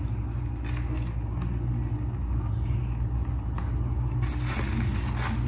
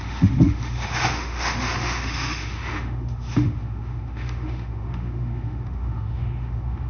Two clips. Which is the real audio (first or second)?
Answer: first